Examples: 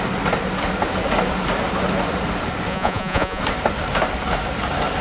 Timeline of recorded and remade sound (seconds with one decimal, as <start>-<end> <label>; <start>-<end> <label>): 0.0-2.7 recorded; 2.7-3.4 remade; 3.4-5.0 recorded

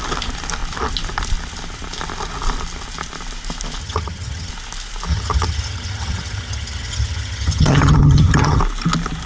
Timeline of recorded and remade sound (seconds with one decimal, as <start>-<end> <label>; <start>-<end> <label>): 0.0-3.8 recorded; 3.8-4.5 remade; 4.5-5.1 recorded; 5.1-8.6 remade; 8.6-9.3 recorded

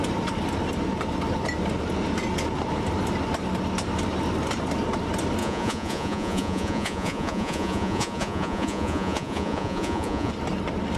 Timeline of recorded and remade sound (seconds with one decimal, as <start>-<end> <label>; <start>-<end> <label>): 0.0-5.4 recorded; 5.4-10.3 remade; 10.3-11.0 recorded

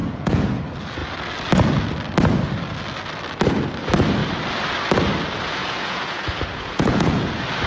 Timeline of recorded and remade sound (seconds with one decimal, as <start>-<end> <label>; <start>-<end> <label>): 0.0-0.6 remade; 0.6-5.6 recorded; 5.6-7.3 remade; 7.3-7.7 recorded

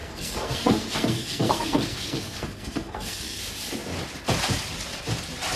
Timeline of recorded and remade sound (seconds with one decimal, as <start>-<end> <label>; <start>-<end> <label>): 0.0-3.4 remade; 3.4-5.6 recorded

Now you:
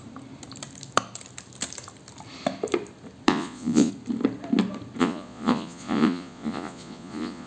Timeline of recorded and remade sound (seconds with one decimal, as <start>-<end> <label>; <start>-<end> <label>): 0.0-3.3 recorded; 3.3-3.9 remade; 3.9-5.0 recorded; 5.0-7.5 remade

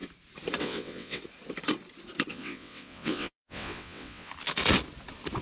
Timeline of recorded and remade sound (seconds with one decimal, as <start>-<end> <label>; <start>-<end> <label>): 0.0-0.6 recorded; 0.6-1.2 remade; 1.2-2.3 recorded; 2.3-4.3 remade; 4.3-5.4 recorded